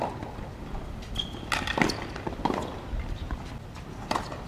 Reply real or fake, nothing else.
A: real